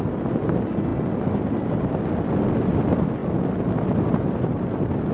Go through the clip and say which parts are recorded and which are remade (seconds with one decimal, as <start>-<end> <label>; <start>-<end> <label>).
0.0-5.1 recorded